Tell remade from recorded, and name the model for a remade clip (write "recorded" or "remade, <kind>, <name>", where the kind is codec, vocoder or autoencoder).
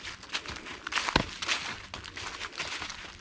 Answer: recorded